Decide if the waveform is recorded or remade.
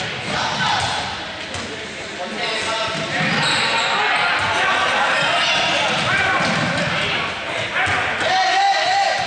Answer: recorded